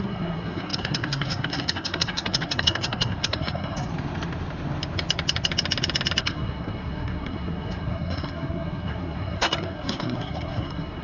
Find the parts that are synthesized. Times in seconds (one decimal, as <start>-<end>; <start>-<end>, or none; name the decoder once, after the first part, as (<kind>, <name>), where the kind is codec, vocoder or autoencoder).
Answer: 0.0-3.9 (codec, SNAC); 6.2-11.0